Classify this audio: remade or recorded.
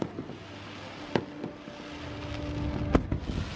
recorded